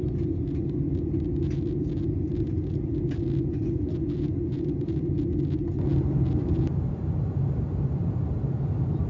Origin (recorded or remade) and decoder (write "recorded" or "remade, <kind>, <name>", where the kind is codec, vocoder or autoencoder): recorded